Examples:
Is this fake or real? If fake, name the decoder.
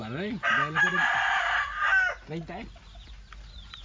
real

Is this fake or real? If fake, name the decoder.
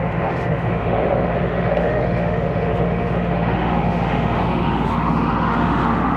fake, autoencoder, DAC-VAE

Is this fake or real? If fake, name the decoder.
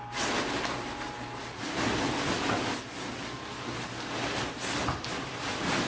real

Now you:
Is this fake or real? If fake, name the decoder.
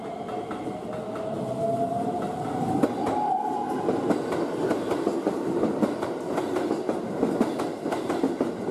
real